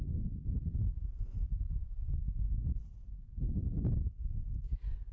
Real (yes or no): yes